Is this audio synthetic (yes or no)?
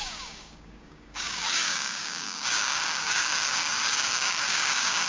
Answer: yes